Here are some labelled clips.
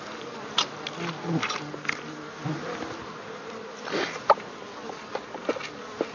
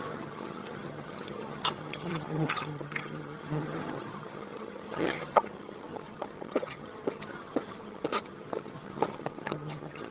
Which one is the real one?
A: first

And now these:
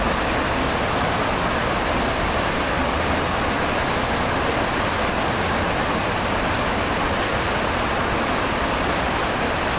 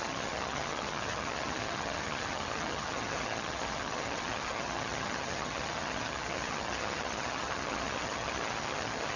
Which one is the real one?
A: first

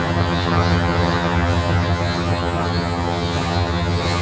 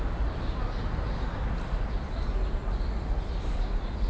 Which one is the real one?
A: second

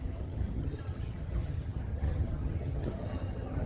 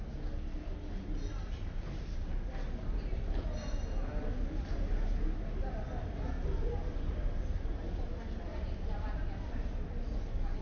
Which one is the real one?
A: second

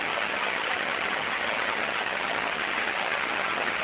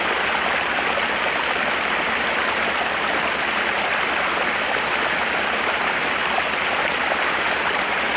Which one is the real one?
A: second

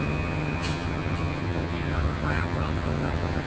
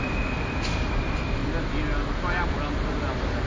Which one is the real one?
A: second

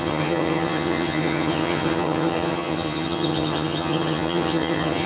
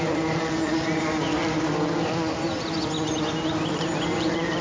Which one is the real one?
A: second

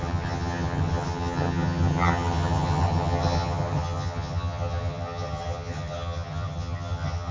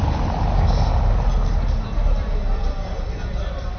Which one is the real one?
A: second